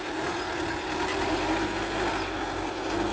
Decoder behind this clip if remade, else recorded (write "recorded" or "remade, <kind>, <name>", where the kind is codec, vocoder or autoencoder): recorded